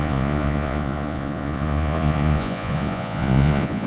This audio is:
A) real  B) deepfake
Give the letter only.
B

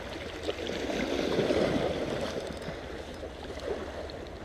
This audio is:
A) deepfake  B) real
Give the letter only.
B